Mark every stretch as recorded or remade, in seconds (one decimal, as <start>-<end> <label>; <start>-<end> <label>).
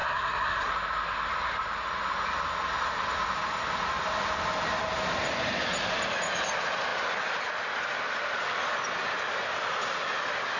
0.0-0.7 remade; 0.7-10.6 recorded